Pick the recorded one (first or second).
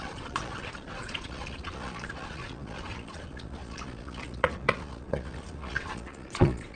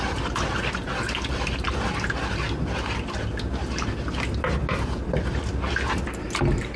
second